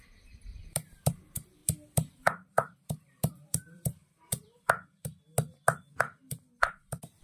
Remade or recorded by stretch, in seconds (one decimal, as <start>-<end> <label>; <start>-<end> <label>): 0.0-1.6 remade; 1.6-2.1 recorded; 2.1-4.0 remade; 4.0-6.7 recorded; 6.7-7.2 remade